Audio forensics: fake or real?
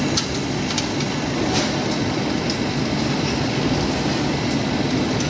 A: real